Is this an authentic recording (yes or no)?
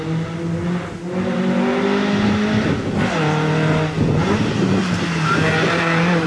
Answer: yes